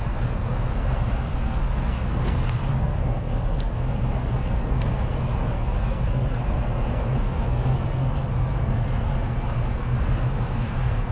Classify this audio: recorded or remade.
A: remade